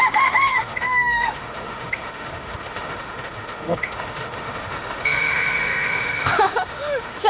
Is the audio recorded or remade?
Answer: remade